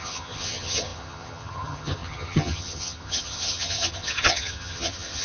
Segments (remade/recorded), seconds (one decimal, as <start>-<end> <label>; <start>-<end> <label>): 0.0-5.2 remade